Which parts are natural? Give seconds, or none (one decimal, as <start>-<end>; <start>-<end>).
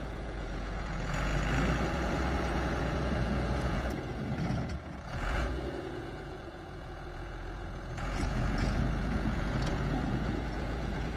1.3-1.9